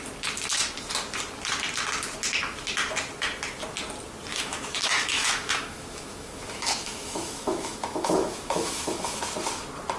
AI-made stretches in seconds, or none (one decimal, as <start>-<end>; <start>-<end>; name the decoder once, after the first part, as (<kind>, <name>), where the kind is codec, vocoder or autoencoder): 4.3-9.2 (autoencoder, DAC-VAE)